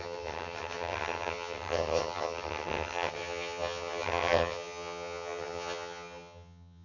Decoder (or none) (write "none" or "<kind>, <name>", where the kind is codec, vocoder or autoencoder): vocoder, HiFi-GAN